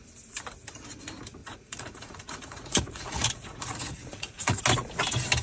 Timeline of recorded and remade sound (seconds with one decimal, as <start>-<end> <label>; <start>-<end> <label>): 0.0-1.4 recorded; 1.4-4.6 remade; 4.6-5.4 recorded